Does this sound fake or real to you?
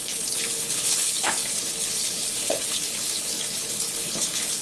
fake